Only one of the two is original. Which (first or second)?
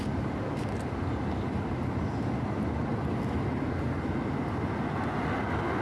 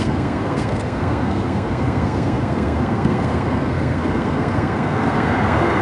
first